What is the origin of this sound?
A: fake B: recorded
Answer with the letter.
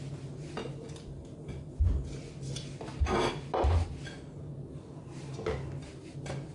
B